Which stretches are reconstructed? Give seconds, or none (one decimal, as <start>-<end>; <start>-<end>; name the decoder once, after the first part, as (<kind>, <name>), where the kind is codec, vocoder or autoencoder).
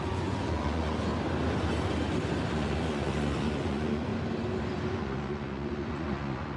0.0-1.1 (vocoder, Vocos); 2.5-4.1; 4.9-6.6